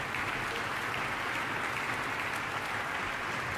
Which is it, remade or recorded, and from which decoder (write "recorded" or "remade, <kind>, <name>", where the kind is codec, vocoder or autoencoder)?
recorded